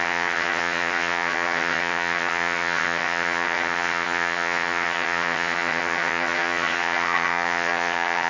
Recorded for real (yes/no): no